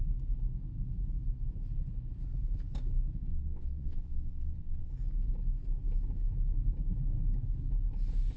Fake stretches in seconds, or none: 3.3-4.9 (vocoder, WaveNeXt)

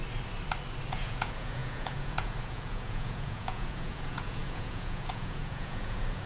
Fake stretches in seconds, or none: 0.9-6.3 (vocoder, Vocos)

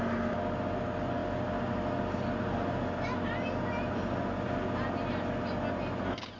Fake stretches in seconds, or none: none

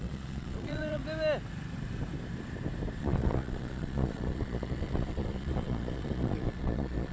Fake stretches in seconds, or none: 0.0-1.0 (vocoder, Vocos); 3.0-7.1

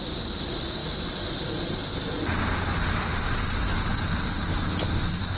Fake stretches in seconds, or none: none

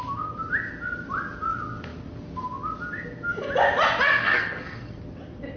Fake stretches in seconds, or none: 4.2-5.0 (codec, SNAC)

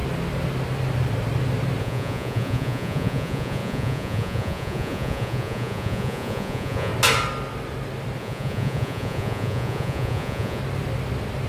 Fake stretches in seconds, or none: 1.8-6.9 (vocoder, Vocos); 8.2-10.6